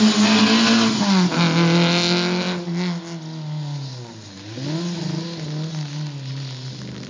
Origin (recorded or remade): recorded